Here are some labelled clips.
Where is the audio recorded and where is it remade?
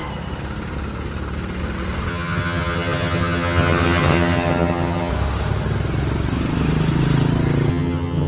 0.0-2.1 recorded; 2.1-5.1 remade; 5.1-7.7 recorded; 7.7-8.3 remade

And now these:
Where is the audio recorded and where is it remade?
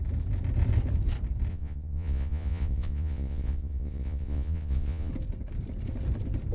0.0-1.5 recorded; 1.5-5.1 remade; 5.1-6.5 recorded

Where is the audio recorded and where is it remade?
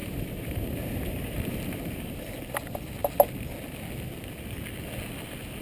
0.0-2.4 remade; 2.4-5.6 recorded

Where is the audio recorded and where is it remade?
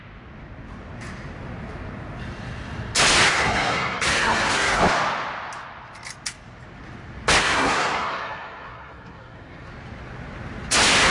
0.0-3.3 recorded; 3.3-4.8 remade; 4.8-7.4 recorded; 7.4-9.7 remade; 9.7-11.1 recorded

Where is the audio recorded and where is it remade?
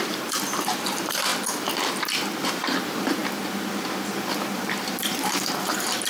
0.0-1.3 remade; 1.3-2.4 recorded; 2.4-3.2 remade; 3.2-4.1 recorded; 4.1-6.1 remade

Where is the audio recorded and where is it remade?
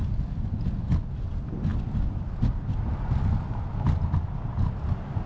0.0-5.3 recorded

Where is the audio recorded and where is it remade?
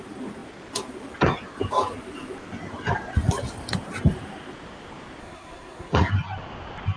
0.0-5.2 recorded; 5.2-6.1 remade; 6.1-7.0 recorded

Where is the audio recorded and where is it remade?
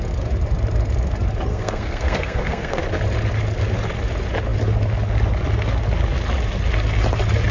0.0-1.5 recorded; 1.5-2.8 remade; 2.8-7.5 recorded